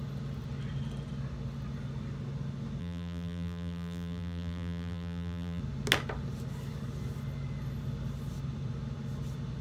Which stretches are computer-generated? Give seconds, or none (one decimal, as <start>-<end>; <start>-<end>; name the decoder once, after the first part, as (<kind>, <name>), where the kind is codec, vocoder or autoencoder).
2.8-5.6 (vocoder, BigVGAN v2)